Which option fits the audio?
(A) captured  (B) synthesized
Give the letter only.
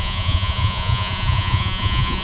B